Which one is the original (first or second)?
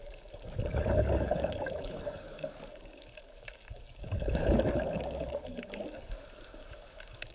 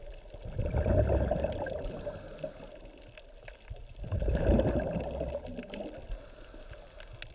second